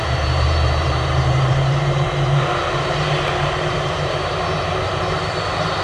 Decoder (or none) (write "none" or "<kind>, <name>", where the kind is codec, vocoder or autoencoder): vocoder, BigVGAN v2